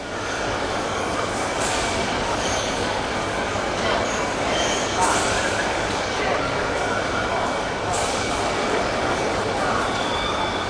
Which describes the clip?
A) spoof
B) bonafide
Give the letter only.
A